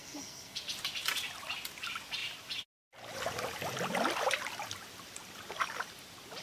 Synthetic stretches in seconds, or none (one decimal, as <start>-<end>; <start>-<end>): 0.0-0.6